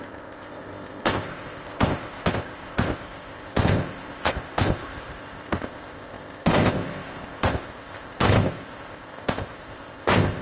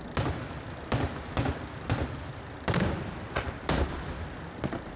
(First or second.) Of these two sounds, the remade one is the first